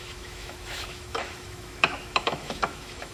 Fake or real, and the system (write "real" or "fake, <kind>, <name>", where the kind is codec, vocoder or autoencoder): fake, autoencoder, DAC-VAE